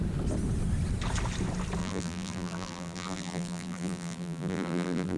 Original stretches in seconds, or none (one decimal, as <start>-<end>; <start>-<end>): 0.0-1.8